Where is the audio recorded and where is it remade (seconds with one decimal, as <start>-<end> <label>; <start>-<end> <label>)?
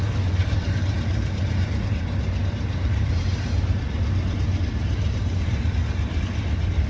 0.0-0.4 recorded; 0.4-3.8 remade; 3.8-4.8 recorded; 4.8-5.6 remade; 5.6-6.9 recorded